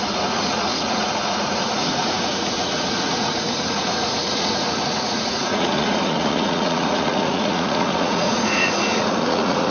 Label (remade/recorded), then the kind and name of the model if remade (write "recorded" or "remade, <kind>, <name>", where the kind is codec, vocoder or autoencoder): remade, vocoder, Vocos